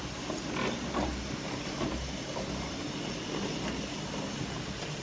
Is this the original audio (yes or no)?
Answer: yes